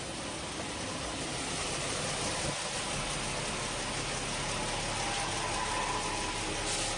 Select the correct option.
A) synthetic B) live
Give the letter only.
B